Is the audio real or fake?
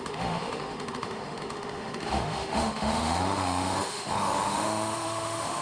fake